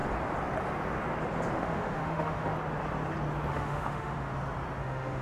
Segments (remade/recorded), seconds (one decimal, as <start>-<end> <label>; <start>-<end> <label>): 0.0-1.5 recorded; 1.5-2.5 remade; 2.5-3.5 recorded; 3.5-4.3 remade; 4.3-4.8 recorded; 4.8-5.2 remade